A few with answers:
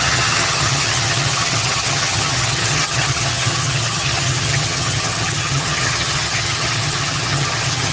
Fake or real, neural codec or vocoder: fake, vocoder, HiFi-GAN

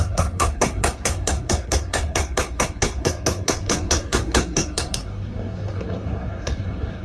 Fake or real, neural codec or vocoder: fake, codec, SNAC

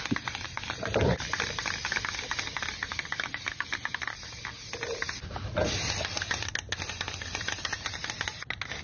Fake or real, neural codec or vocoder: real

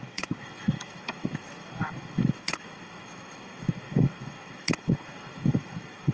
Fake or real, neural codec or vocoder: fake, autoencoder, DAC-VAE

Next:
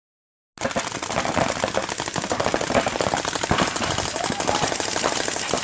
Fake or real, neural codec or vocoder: real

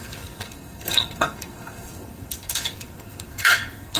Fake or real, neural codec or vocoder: fake, codec, SNAC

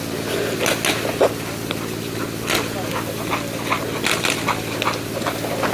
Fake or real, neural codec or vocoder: real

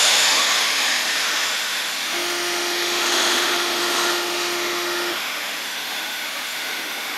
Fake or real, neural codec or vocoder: fake, autoencoder, DAC-VAE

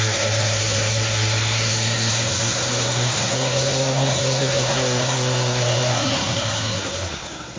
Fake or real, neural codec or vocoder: fake, codec, SNAC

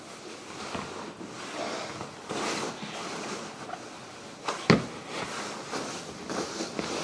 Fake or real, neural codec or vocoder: real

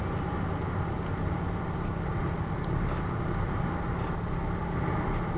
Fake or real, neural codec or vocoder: real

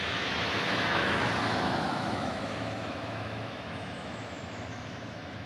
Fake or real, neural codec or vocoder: fake, autoencoder, DAC-VAE